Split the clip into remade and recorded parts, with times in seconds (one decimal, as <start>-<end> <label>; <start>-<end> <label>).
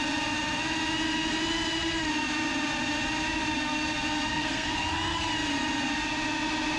0.0-4.3 recorded; 4.3-4.8 remade; 4.8-6.8 recorded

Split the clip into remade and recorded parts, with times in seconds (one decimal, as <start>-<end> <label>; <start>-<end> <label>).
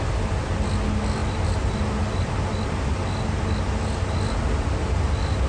0.0-5.5 recorded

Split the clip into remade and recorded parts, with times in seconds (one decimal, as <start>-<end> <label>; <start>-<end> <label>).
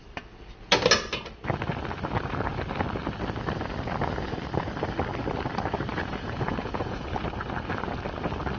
0.0-5.9 recorded; 5.9-7.2 remade; 7.2-8.6 recorded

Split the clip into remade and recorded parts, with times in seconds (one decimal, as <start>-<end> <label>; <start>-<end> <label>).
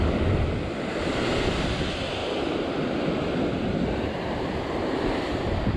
0.0-2.2 recorded; 2.2-5.8 remade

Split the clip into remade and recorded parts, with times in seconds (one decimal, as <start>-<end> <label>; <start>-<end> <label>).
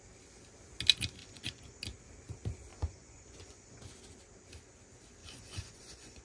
0.0-1.2 recorded; 1.2-1.8 remade; 1.8-2.7 recorded; 2.7-3.8 remade; 3.8-5.2 recorded; 5.2-6.2 remade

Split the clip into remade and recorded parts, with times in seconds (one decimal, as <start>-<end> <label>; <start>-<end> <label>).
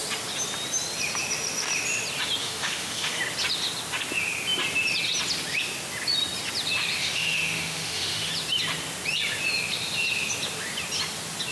0.0-2.4 recorded; 2.4-3.2 remade; 3.2-7.0 recorded; 7.0-8.3 remade; 8.3-11.5 recorded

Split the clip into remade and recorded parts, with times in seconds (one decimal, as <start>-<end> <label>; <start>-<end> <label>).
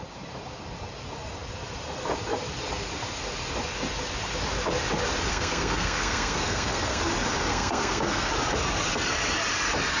0.0-5.3 recorded; 5.3-7.0 remade; 7.0-7.5 recorded; 7.5-8.3 remade; 8.3-10.0 recorded